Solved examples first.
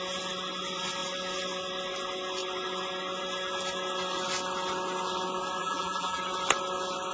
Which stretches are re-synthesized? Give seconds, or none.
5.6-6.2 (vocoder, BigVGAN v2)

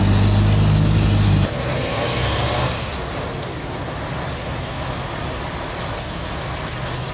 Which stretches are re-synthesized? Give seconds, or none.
none

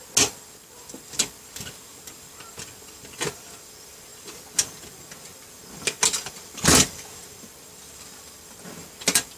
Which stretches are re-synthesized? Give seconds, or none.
none

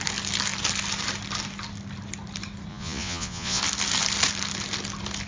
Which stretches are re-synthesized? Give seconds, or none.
2.7-3.6 (vocoder, Vocos)

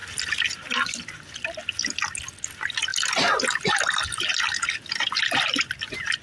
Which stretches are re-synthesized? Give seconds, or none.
none

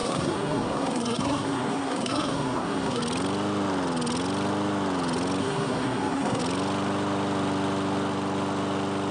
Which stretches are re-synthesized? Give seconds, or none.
0.0-3.0 (codec, SNAC); 5.4-6.4